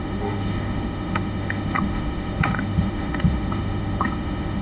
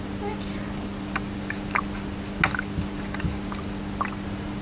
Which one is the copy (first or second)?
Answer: first